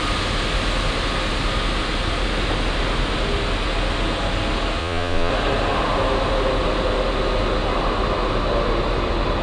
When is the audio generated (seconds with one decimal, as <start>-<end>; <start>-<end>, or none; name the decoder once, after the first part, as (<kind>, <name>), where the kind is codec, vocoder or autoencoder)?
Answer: 4.8-5.3 (vocoder, Vocos)